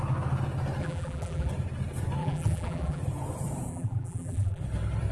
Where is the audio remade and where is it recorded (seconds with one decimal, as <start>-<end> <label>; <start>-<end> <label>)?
0.0-0.8 recorded; 0.8-1.5 remade; 1.5-2.2 recorded; 2.2-3.0 remade; 3.0-3.7 recorded; 3.7-4.6 remade; 4.6-5.1 recorded